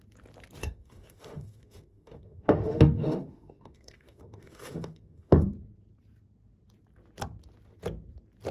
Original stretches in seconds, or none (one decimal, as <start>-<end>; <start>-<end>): 0.0-0.6; 5.5-8.5